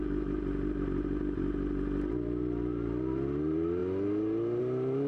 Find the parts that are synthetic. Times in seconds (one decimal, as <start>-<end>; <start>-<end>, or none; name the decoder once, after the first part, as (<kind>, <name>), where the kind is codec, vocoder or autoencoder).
none